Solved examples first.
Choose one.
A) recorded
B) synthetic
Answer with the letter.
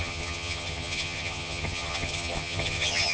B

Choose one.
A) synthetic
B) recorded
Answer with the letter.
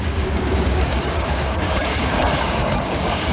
A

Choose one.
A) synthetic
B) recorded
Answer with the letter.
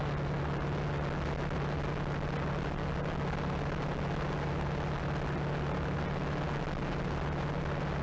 B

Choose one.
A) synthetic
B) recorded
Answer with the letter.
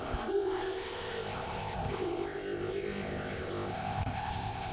A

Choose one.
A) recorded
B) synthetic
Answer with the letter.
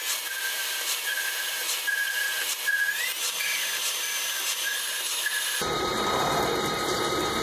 B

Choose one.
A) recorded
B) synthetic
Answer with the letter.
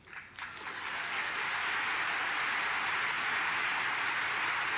A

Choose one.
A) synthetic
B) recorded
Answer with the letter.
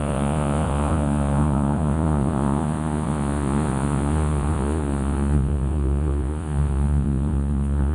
A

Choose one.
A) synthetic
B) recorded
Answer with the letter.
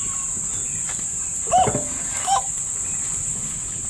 B